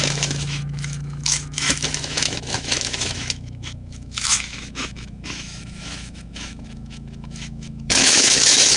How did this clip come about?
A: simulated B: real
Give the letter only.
A